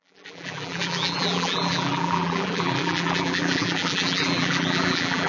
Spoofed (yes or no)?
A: yes